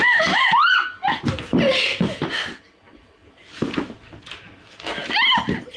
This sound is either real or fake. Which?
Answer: real